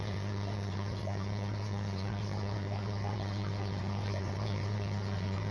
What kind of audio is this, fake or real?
fake